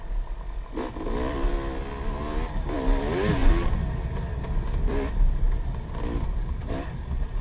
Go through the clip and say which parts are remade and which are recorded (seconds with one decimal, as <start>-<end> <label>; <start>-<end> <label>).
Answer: 0.0-7.4 recorded